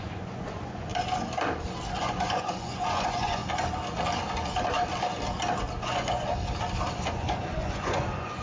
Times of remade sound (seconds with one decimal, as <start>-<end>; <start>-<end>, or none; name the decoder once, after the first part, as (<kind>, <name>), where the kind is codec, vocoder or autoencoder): 0.0-0.9 (vocoder, Vocos); 2.0-3.4; 5.8-6.3; 7.1-8.4